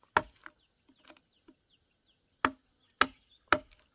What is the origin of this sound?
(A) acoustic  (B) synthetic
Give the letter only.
A